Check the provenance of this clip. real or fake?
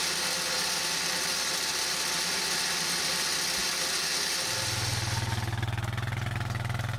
real